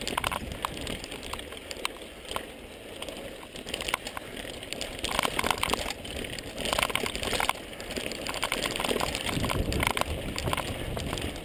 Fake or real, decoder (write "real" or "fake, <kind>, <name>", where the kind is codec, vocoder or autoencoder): real